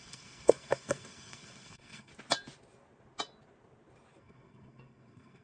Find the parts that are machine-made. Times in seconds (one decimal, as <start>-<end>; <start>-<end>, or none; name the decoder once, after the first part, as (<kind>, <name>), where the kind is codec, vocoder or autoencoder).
0.0-2.1 (codec, SNAC); 4.2-5.4